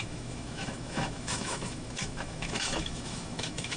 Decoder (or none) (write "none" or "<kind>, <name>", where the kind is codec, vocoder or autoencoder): autoencoder, DAC-VAE